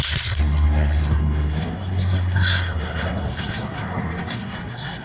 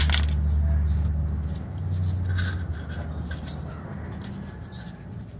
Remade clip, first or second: first